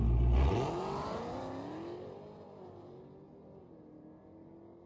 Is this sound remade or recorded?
recorded